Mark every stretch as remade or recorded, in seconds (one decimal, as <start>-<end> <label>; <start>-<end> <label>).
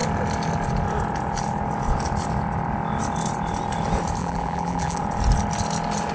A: 0.0-4.2 recorded; 4.2-5.0 remade; 5.0-6.1 recorded